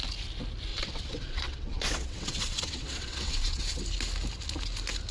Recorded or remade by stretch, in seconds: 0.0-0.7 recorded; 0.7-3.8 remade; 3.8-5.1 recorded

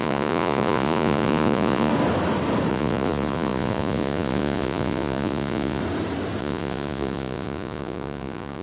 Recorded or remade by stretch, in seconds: 0.0-1.9 remade; 1.9-2.7 recorded; 2.7-5.8 remade; 5.8-6.4 recorded; 6.4-8.6 remade

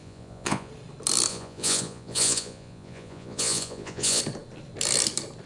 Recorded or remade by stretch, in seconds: 0.0-0.7 remade; 0.7-1.3 recorded; 1.3-4.2 remade; 4.2-5.5 recorded

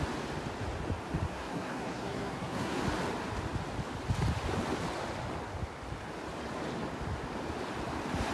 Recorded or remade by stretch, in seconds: 0.0-1.3 recorded; 1.3-2.8 remade; 2.8-8.3 recorded

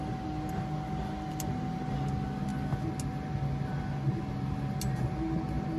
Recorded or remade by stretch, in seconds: 0.0-5.8 recorded